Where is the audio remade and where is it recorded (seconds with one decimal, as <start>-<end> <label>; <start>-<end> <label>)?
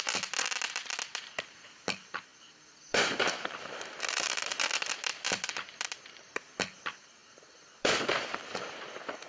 0.0-9.3 remade